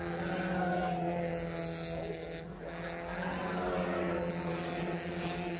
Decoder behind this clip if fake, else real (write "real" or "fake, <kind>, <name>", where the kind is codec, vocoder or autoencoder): real